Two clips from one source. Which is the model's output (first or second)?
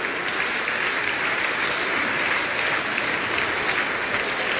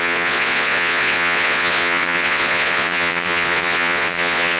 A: second